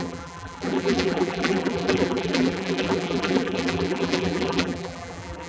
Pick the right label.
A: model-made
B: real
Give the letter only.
A